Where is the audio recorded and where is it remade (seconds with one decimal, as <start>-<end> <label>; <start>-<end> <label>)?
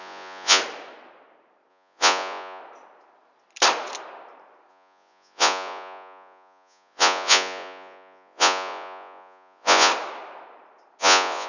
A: 0.0-0.6 remade; 0.6-1.7 recorded; 1.7-2.6 remade; 2.6-4.7 recorded; 4.7-9.9 remade; 9.9-11.0 recorded; 11.0-11.5 remade